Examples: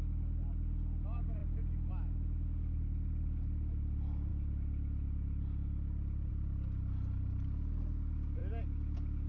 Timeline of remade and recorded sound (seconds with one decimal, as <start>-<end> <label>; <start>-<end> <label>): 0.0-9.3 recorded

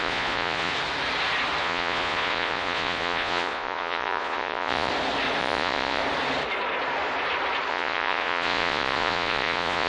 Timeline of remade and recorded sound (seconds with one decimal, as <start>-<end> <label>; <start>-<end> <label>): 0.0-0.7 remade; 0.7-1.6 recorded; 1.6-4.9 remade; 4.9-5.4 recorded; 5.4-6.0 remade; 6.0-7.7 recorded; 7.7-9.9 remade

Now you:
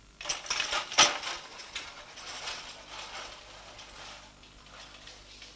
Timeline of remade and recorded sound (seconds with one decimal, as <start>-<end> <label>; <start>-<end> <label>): 0.0-1.5 recorded; 1.5-2.6 remade; 2.6-5.6 recorded